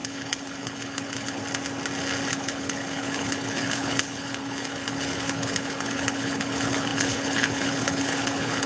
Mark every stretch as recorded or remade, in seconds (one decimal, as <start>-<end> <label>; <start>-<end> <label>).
0.0-1.4 remade; 1.4-2.3 recorded; 2.3-8.7 remade